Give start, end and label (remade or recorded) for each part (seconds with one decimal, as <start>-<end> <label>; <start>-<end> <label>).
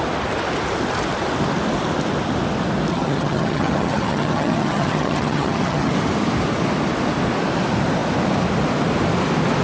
0.0-2.9 recorded; 2.9-5.9 remade; 5.9-9.6 recorded